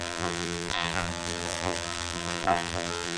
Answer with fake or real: fake